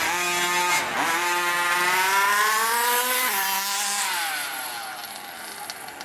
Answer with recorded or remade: recorded